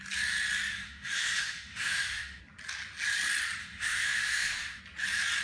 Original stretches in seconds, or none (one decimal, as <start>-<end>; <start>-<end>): 0.0-0.7; 2.4-3.6; 4.8-5.4